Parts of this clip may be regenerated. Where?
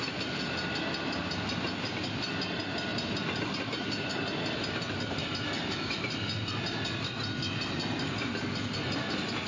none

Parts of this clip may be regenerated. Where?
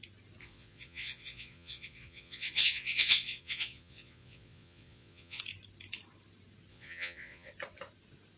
0.4-5.4; 6.7-7.5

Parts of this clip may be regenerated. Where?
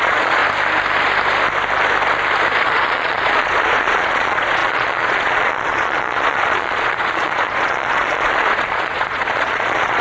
0.0-0.4; 2.6-10.0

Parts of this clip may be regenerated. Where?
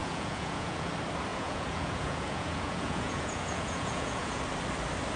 0.0-0.9; 1.3-4.4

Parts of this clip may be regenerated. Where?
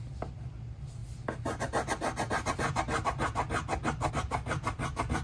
none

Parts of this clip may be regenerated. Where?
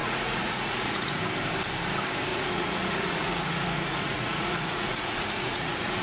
0.0-1.2; 2.3-6.0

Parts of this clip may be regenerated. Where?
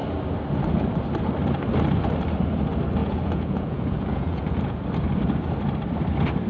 3.0-4.8